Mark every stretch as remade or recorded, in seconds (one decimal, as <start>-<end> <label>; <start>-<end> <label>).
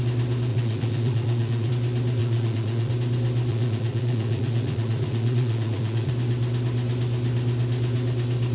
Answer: 0.0-0.5 recorded; 0.5-1.7 remade; 1.7-2.2 recorded; 2.2-2.9 remade; 2.9-3.5 recorded; 3.5-6.1 remade; 6.1-8.5 recorded